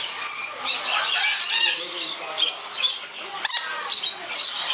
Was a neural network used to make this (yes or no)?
no